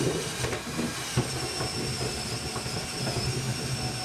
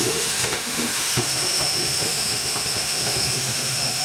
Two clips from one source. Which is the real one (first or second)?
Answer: first